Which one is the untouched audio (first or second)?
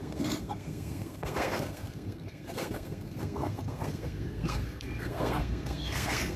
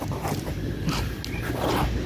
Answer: second